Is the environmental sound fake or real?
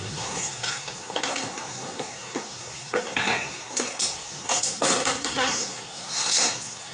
fake